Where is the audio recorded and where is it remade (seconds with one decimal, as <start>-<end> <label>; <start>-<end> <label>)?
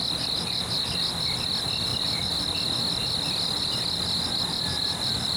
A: 0.0-5.4 recorded